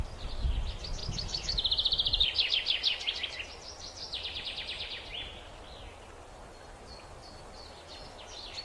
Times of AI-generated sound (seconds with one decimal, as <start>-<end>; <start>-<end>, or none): 1.0-2.5